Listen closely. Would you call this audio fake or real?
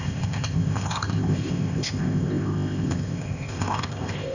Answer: fake